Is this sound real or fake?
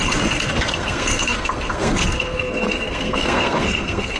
fake